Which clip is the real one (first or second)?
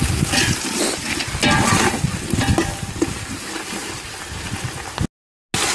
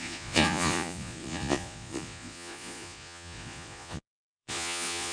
first